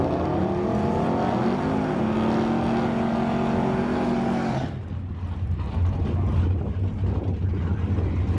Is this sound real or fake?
real